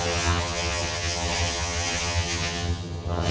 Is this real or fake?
fake